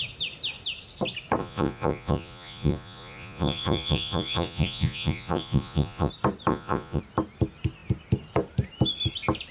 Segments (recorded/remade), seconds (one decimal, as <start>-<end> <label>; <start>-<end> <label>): 0.0-1.4 recorded; 1.4-6.1 remade; 6.1-6.5 recorded; 6.5-7.0 remade; 7.0-9.5 recorded